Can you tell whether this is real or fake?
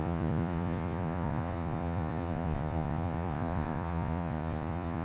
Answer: fake